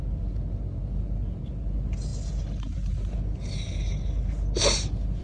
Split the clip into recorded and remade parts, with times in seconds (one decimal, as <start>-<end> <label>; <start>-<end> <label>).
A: 0.0-5.2 recorded